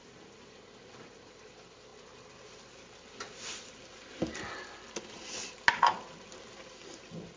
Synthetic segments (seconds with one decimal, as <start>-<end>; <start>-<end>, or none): none